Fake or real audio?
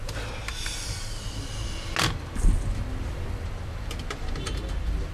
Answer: real